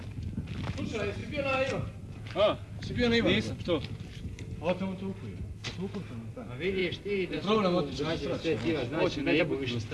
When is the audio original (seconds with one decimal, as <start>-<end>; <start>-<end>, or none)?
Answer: 0.0-9.9